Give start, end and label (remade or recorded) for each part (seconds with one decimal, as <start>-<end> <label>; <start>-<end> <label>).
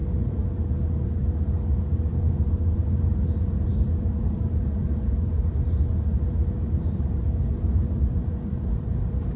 0.0-2.2 recorded; 2.2-9.4 remade